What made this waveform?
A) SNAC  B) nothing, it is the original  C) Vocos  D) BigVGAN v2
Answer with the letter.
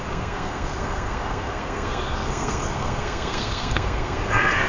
A